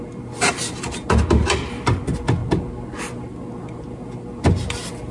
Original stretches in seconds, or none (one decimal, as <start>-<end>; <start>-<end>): 0.0-5.1